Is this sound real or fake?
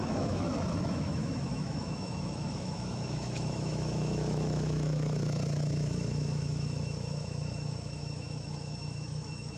fake